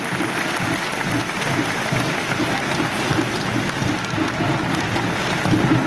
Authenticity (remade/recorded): recorded